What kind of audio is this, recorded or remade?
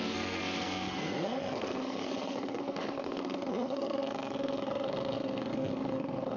remade